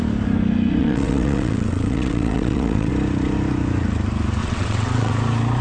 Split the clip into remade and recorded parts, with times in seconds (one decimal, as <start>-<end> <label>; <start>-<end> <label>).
0.0-0.8 recorded; 0.8-2.9 remade; 2.9-4.4 recorded; 4.4-5.1 remade; 5.1-5.6 recorded